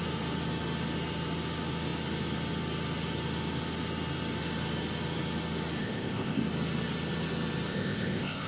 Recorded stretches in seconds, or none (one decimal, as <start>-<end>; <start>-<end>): 0.0-5.8; 6.4-7.7